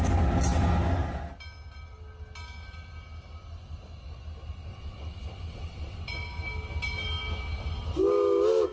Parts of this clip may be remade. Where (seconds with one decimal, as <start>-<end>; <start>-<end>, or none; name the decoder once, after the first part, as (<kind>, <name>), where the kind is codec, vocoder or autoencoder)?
4.7-6.0 (vocoder, WaveNeXt)